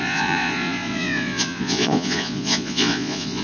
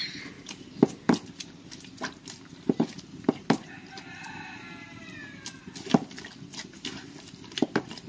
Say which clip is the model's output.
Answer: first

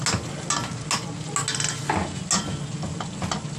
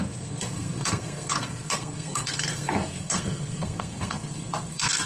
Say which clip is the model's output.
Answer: second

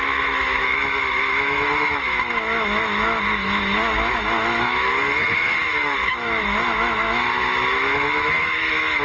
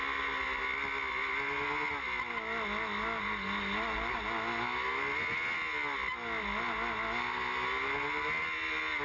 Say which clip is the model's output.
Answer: first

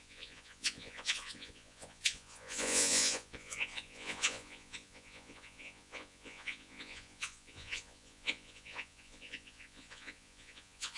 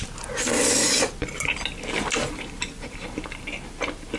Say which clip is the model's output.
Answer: first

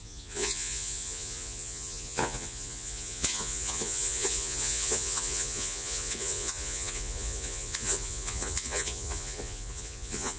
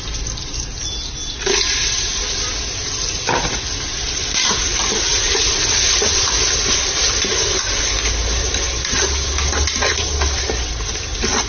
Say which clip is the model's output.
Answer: first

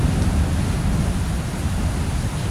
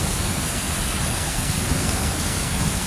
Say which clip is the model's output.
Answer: second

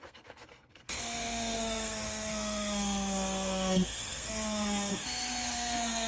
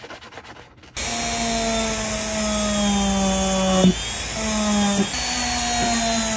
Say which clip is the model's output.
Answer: first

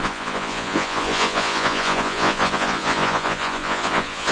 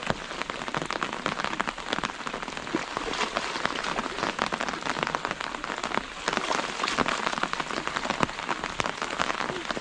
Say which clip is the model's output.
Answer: first